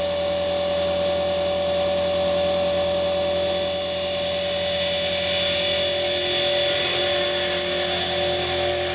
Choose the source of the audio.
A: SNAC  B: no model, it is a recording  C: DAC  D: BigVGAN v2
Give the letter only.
B